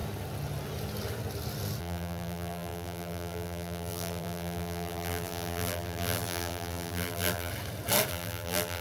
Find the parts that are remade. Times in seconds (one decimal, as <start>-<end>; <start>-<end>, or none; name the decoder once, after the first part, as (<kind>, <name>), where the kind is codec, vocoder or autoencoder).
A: 1.8-7.5 (vocoder, BigVGAN v2); 8.1-8.8